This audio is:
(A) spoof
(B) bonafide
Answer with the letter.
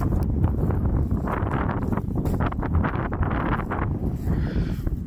A